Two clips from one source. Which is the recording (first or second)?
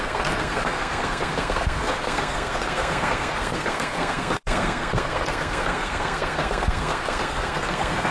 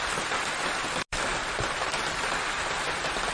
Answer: second